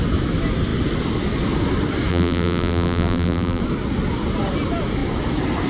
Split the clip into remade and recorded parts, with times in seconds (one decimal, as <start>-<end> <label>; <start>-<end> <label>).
0.0-2.1 recorded; 2.1-3.6 remade; 3.6-5.7 recorded